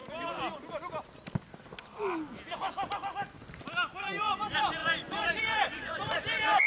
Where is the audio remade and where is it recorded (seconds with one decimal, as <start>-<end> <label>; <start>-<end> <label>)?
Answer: 0.0-4.0 recorded; 4.0-6.7 remade